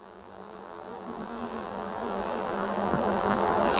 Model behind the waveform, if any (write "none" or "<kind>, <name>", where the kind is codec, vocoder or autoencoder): vocoder, BigVGAN v2